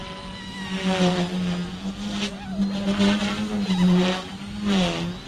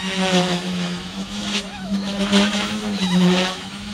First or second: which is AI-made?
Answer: second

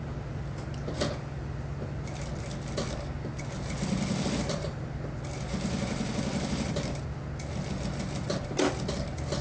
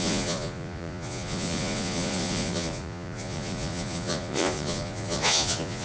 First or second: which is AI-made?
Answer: second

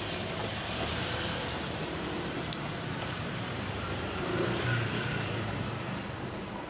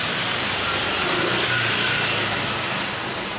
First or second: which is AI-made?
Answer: first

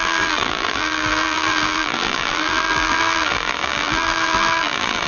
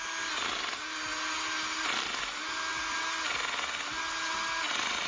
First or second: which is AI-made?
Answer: first